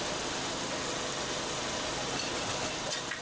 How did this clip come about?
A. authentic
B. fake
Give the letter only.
A